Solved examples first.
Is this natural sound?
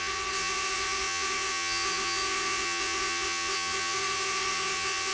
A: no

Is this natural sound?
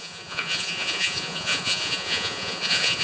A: no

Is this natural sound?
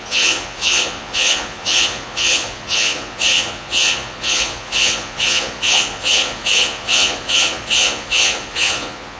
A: no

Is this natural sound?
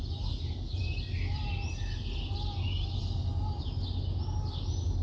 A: yes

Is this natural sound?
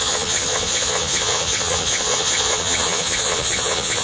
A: no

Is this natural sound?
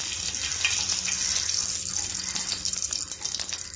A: yes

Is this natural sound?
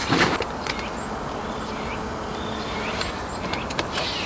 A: yes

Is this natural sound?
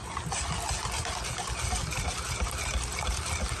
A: yes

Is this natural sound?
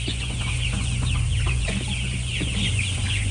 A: no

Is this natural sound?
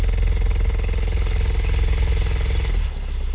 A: yes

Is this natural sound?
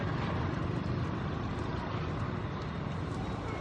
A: yes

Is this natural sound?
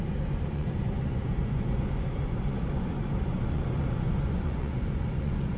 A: no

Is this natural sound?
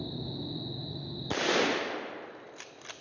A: yes